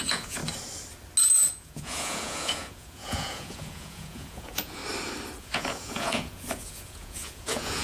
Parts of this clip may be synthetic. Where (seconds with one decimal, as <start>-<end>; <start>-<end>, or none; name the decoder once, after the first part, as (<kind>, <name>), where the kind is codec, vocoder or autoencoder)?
0.0-0.4 (vocoder, Vocos); 1.5-4.8; 5.4-7.8